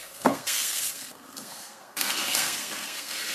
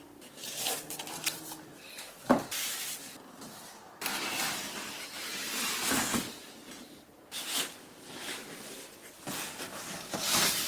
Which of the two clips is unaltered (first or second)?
second